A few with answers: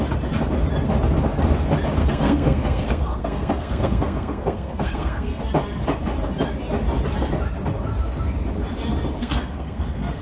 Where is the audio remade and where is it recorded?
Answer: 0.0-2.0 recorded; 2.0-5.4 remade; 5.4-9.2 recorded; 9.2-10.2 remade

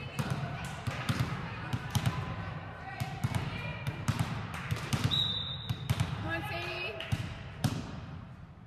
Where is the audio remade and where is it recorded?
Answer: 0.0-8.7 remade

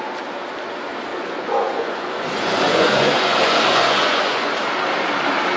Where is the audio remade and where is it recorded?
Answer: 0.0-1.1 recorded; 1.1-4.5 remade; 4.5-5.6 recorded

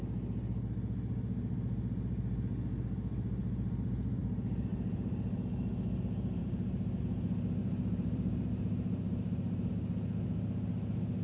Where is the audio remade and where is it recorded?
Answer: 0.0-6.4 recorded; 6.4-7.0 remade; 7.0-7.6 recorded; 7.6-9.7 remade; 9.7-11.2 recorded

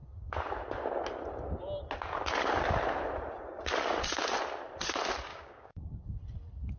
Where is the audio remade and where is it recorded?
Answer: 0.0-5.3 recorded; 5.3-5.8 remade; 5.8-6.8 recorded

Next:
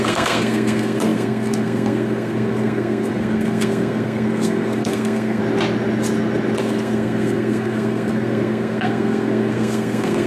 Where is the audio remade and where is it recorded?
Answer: 0.0-5.4 remade; 5.4-6.6 recorded; 6.6-10.3 remade

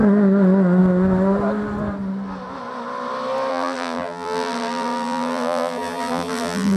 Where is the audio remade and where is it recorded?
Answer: 0.0-3.5 recorded; 3.5-6.8 remade

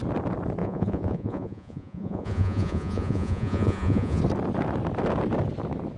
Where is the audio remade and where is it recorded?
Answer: 0.0-0.6 recorded; 0.6-4.2 remade; 4.2-6.0 recorded